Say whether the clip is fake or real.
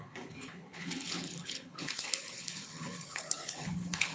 fake